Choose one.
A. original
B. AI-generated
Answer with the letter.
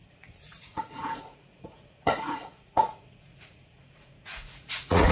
B